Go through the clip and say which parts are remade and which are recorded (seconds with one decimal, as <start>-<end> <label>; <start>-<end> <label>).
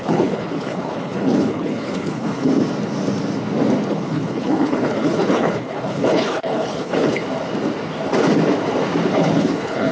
0.0-2.5 remade; 2.5-3.9 recorded; 3.9-7.2 remade; 7.2-9.1 recorded; 9.1-9.9 remade